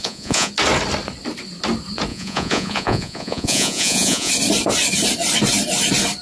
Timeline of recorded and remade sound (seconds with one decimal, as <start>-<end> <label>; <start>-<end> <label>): 0.0-0.5 remade; 0.5-2.1 recorded; 2.1-4.3 remade; 4.3-6.2 recorded